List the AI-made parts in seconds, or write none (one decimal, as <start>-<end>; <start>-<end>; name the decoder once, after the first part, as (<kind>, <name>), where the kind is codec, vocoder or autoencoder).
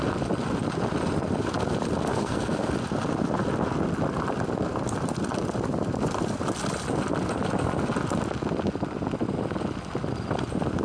2.1-2.7 (codec, SNAC)